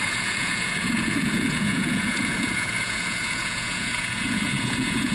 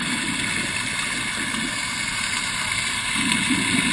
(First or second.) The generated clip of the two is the first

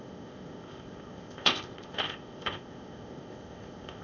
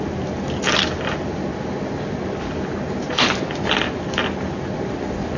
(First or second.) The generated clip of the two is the first